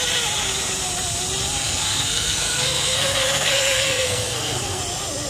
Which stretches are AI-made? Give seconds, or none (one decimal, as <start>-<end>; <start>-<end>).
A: 1.6-4.8